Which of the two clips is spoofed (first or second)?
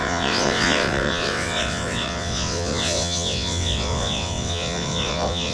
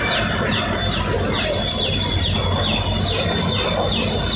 first